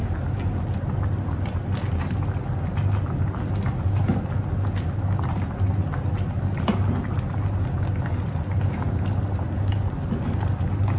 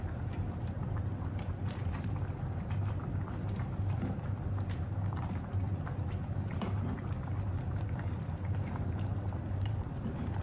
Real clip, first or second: first